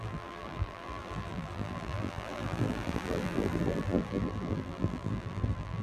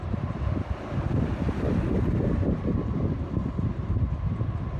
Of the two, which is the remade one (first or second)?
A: first